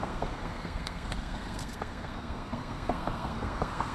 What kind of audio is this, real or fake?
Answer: fake